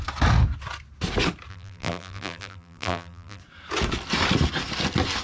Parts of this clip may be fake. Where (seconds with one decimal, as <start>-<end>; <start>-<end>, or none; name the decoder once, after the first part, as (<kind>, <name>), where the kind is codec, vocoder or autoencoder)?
1.5-3.4 (vocoder, BigVGAN v2)